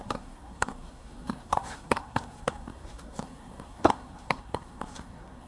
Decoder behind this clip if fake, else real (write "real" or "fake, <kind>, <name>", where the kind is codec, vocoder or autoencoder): fake, codec, SNAC